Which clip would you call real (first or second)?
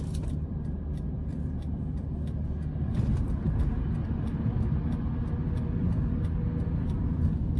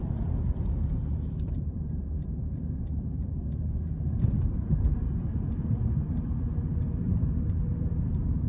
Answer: first